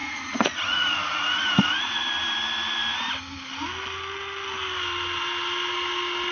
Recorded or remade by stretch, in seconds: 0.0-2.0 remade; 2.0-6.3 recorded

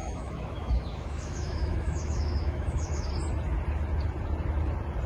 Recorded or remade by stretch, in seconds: 0.0-3.1 remade; 3.1-5.1 recorded

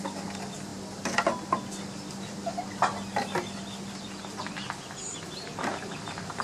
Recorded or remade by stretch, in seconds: 0.0-5.1 recorded; 5.1-6.4 remade

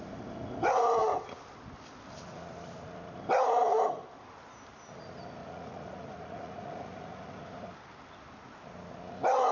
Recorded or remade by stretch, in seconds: 0.0-5.4 recorded; 5.4-7.4 remade; 7.4-9.5 recorded

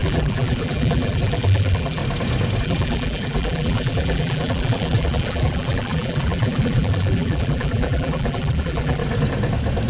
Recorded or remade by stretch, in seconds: 0.0-2.0 remade; 2.0-2.6 recorded; 2.6-9.0 remade; 9.0-9.9 recorded

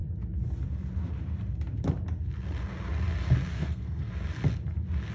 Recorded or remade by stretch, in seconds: 0.0-3.5 recorded; 3.5-4.1 remade; 4.1-5.1 recorded

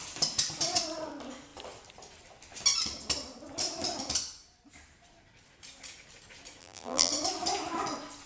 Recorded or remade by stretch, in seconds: 0.0-6.6 recorded; 6.6-7.1 remade; 7.1-8.3 recorded